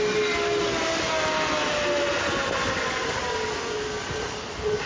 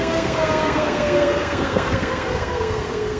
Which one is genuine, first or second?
first